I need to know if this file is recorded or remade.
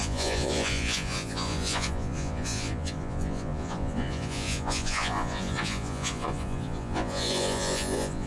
remade